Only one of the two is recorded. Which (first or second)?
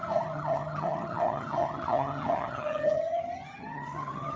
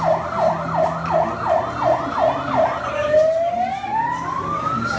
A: second